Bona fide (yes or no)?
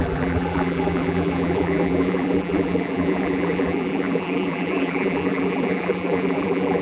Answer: no